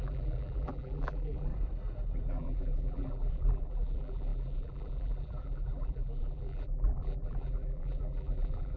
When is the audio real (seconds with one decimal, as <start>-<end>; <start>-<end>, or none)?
1.5-2.3

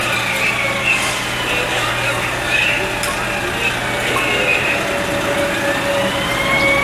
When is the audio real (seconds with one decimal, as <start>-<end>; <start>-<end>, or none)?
0.0-1.7; 2.7-6.8

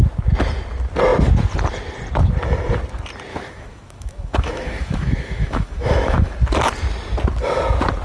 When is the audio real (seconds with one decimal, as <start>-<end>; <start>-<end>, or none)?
0.0-3.3; 6.3-8.0

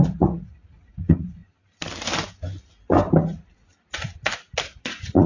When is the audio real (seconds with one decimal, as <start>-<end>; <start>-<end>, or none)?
1.4-4.6

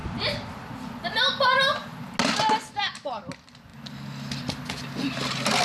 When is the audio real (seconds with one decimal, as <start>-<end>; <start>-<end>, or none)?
0.0-5.6

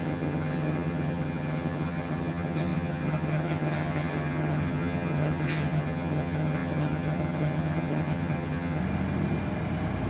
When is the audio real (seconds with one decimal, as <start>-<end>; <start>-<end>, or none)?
8.8-10.1

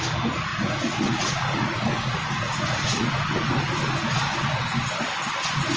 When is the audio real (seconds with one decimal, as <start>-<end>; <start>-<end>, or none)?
0.0-0.5; 3.7-5.8